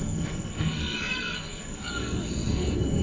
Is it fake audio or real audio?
fake